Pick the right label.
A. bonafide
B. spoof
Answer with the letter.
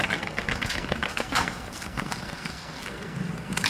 B